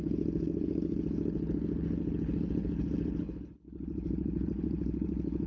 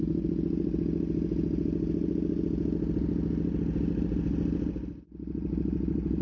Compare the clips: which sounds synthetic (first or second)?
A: first